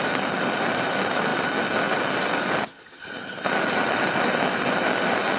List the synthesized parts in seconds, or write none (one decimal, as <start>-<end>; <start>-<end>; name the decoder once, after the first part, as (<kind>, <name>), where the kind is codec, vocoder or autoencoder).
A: none